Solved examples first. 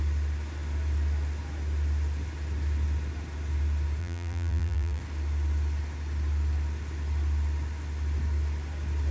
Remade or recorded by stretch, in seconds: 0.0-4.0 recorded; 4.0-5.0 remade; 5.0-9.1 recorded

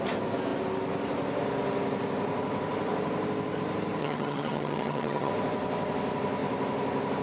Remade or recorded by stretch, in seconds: 0.0-4.0 recorded; 4.0-5.3 remade; 5.3-7.2 recorded

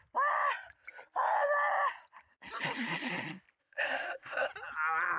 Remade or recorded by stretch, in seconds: 0.0-3.6 recorded; 3.6-4.5 remade; 4.5-5.2 recorded

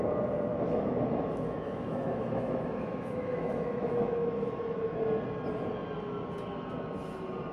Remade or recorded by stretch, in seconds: 0.0-0.5 recorded; 0.5-5.0 remade; 5.0-7.5 recorded

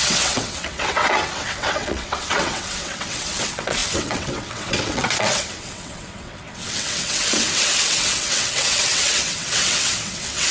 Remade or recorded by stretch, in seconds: 0.0-10.5 remade

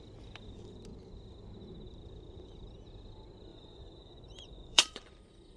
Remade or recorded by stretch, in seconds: 0.0-3.5 recorded; 3.5-5.1 remade; 5.1-5.6 recorded

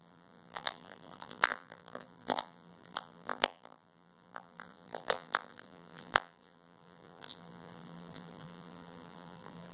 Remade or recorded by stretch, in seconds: 0.0-9.7 remade

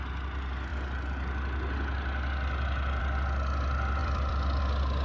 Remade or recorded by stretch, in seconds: 0.0-4.0 recorded; 4.0-4.6 remade; 4.6-5.0 recorded